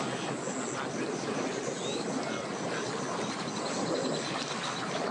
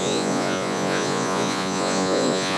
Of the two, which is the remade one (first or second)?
second